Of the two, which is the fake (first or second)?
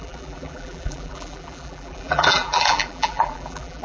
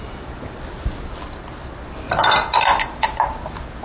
first